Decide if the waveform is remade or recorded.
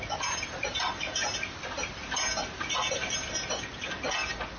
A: recorded